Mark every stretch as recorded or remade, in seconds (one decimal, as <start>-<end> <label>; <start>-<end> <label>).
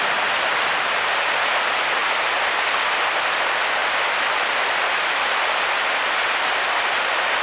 0.0-7.4 recorded